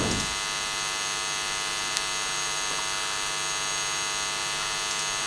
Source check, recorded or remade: recorded